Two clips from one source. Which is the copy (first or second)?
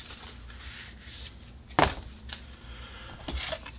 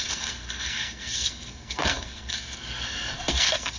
second